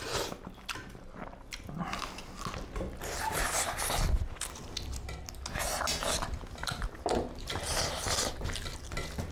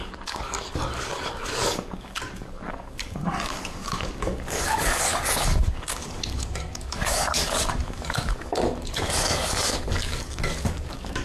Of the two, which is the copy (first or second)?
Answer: second